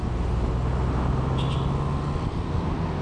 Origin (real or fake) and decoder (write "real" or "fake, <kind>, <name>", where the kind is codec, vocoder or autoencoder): real